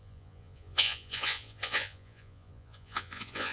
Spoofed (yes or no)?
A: yes